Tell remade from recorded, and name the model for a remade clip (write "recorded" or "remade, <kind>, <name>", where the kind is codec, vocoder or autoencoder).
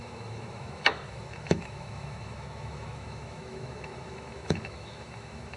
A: remade, autoencoder, DAC-VAE